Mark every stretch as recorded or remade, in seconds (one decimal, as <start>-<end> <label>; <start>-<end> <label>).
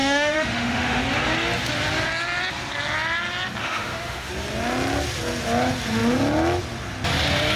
0.0-1.0 remade; 1.0-3.6 recorded; 3.6-4.3 remade; 4.3-7.6 recorded